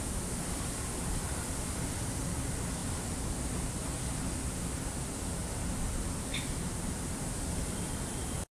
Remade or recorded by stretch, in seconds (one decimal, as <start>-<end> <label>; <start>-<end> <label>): 0.0-5.4 remade; 5.4-6.7 recorded; 6.7-8.5 remade